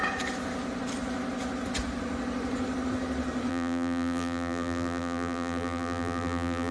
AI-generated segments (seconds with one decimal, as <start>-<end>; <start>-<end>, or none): 3.5-6.7